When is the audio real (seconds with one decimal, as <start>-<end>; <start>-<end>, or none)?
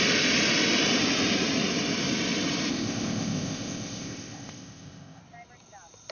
0.0-2.7; 5.2-6.1